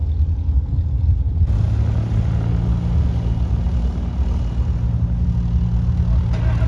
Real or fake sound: real